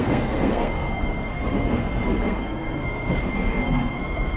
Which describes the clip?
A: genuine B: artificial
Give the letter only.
B